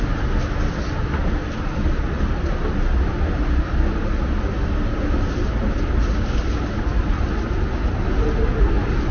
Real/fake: real